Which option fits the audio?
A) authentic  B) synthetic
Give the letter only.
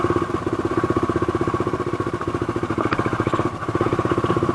B